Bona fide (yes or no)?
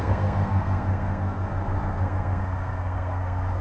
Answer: no